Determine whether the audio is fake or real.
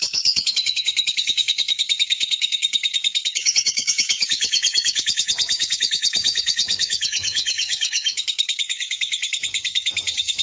fake